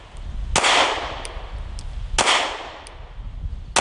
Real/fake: real